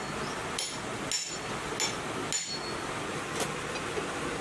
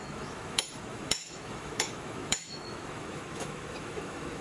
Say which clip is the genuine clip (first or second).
first